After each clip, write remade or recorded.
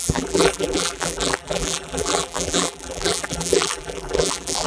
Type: remade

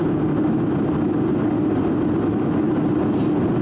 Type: recorded